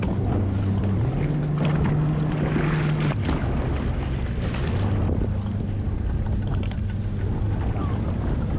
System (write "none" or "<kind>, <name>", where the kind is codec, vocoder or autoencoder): none